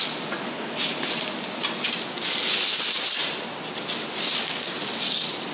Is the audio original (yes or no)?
yes